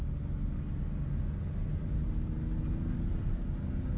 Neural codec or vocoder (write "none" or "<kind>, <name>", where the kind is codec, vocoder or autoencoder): none